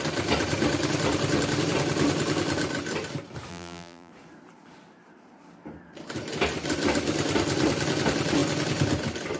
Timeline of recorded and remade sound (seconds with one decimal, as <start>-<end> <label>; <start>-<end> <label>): 0.0-3.5 recorded; 3.5-4.1 remade; 4.1-9.4 recorded